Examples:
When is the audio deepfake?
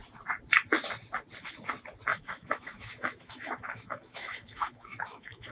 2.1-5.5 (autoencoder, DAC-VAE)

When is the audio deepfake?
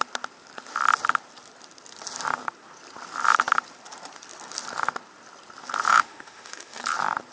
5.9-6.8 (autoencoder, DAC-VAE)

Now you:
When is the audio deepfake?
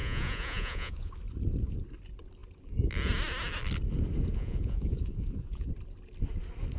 0.0-1.1 (vocoder, Vocos); 4.3-5.7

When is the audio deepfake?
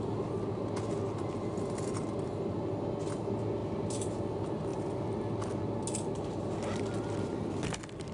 3.6-4.2 (vocoder, BigVGAN v2)